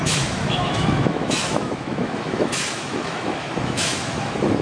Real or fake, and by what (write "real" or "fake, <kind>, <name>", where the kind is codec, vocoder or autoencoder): fake, autoencoder, DAC-VAE